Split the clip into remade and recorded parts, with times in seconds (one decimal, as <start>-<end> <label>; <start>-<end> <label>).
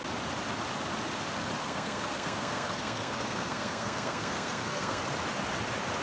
0.0-1.6 recorded; 1.6-5.0 remade; 5.0-6.0 recorded